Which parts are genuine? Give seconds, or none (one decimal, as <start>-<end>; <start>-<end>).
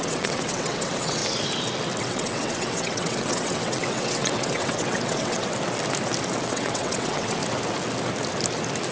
1.2-2.0; 5.5-6.4; 7.4-8.9